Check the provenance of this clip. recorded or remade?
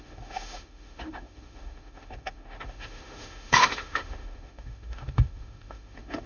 remade